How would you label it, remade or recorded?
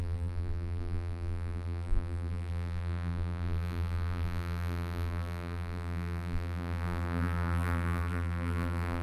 remade